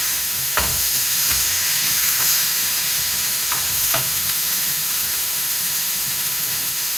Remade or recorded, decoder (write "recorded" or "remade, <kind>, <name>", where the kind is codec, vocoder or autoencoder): remade, autoencoder, DAC-VAE